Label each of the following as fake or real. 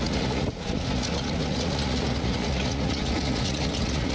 fake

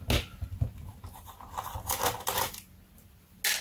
real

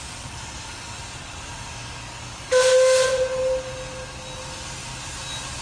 real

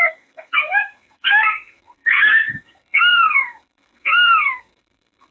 fake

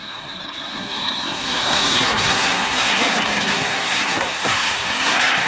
fake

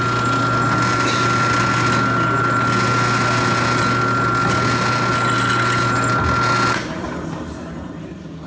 real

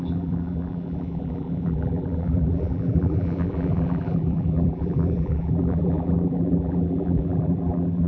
fake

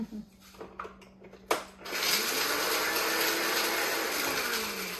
real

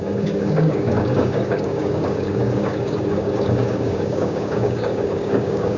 fake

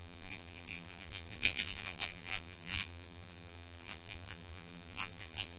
fake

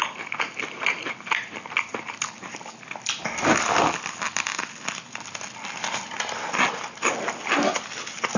real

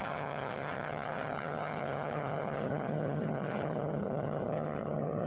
fake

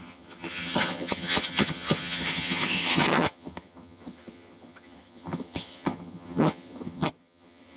fake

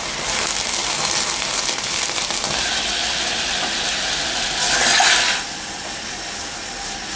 real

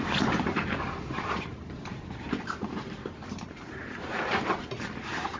fake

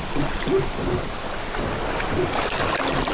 real